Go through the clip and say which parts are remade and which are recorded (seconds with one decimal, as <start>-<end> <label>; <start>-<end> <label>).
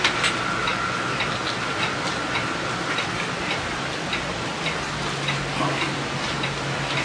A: 0.0-7.0 recorded